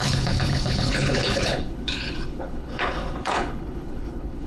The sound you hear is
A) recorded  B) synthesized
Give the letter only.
B